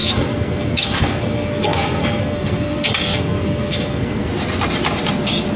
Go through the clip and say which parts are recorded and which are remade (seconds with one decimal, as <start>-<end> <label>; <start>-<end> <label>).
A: 0.0-4.3 remade; 4.3-5.6 recorded